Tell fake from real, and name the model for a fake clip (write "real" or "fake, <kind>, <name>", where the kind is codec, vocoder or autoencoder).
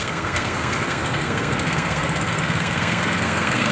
fake, codec, SNAC